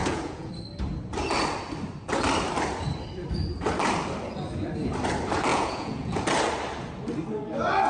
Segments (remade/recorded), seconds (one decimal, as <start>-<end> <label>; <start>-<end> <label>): 0.0-0.5 remade; 0.5-5.5 recorded; 5.5-6.2 remade; 6.2-7.9 recorded